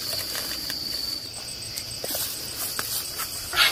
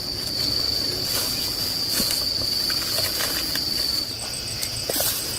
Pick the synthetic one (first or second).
first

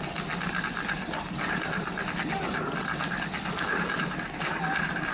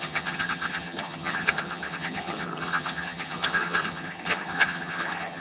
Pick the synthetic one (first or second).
second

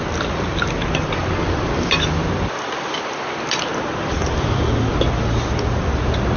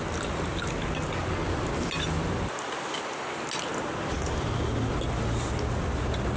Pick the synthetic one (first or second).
first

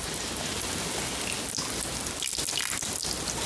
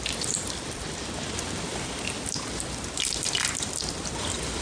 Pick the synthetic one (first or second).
second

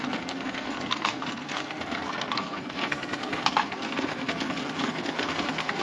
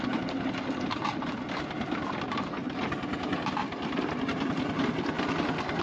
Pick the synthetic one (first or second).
first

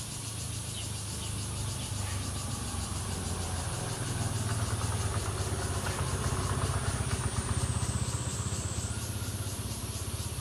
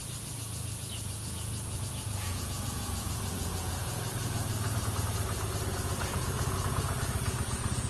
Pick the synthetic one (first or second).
second